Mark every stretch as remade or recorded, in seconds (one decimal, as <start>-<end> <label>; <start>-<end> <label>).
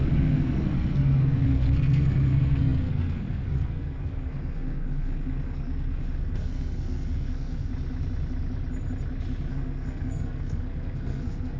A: 0.0-7.7 remade; 7.7-9.5 recorded; 9.5-11.6 remade